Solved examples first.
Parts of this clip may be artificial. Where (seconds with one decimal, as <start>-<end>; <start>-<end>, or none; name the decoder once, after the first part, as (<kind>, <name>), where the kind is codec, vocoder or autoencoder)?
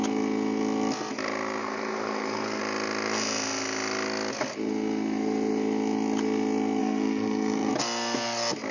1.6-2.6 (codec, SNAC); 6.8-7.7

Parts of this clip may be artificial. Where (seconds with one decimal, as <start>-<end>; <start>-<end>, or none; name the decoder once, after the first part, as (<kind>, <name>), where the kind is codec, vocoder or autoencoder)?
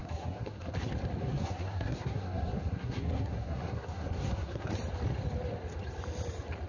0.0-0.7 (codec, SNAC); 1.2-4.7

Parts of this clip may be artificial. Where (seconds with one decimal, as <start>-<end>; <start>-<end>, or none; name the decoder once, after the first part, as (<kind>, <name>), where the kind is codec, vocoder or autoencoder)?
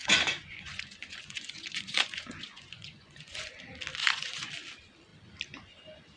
0.0-3.6 (vocoder, Vocos); 4.0-4.5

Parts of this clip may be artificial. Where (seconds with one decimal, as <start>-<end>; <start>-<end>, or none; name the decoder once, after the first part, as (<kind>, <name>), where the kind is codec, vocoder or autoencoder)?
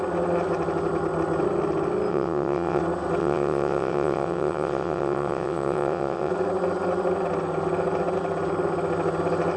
2.1-2.8 (vocoder, WaveNeXt); 3.2-6.3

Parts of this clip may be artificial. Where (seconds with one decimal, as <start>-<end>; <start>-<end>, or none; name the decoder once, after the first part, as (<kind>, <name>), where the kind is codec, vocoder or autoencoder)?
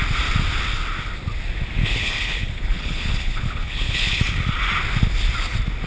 1.8-4.2 (codec, HILCodec)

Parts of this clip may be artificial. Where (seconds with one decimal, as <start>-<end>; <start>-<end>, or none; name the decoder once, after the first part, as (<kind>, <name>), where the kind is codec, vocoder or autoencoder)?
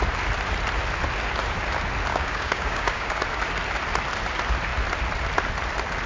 2.1-3.2 (codec, DAC)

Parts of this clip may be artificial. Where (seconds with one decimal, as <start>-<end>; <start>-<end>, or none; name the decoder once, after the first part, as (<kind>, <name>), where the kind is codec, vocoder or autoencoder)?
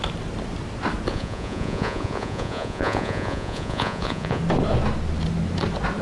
1.1-4.4 (vocoder, Vocos)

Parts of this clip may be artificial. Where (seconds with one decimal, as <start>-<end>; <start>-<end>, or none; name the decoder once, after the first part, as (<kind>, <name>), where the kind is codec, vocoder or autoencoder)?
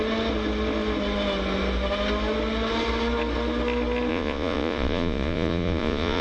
4.1-6.2 (vocoder, Vocos)